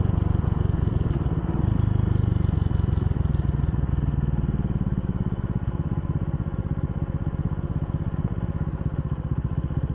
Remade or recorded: recorded